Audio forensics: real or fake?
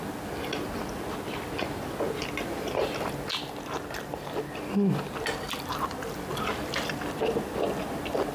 real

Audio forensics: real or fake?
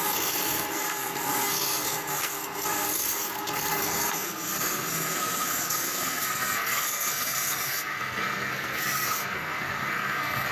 fake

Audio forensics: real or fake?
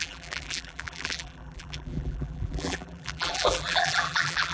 fake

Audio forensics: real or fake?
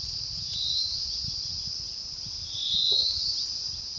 real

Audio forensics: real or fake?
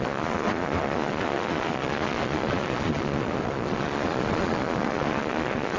fake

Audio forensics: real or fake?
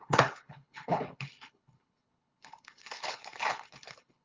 fake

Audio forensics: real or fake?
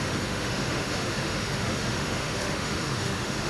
fake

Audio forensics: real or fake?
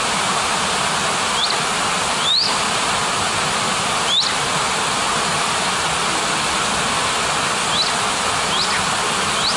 real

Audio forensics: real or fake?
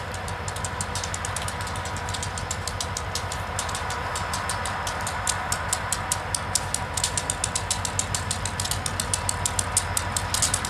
real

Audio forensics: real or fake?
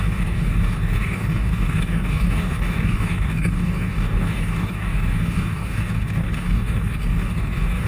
fake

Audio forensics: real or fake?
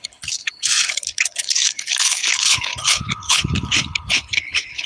fake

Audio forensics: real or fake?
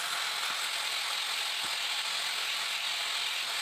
real